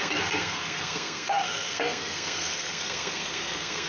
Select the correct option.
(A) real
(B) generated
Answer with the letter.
B